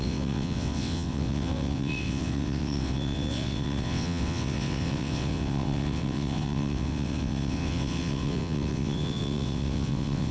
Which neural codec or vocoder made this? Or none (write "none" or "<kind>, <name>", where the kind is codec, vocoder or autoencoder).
vocoder, WaveNeXt